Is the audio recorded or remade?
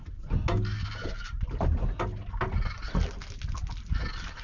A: recorded